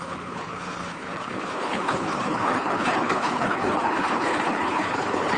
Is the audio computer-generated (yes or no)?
yes